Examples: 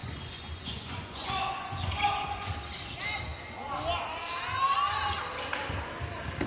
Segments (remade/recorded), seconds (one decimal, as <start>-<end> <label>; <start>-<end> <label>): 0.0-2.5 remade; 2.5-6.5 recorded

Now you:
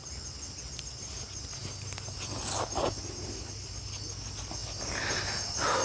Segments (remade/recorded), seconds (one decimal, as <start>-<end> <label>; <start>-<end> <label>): 0.0-5.8 recorded

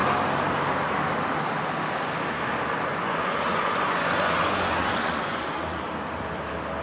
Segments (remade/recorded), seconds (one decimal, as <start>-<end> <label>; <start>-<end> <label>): 0.0-2.9 recorded; 2.9-5.8 remade; 5.8-6.8 recorded